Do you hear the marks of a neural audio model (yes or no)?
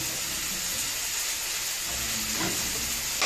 no